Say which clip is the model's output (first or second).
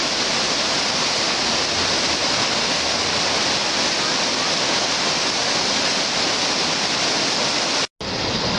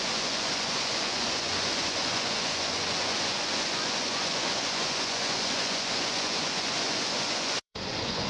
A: second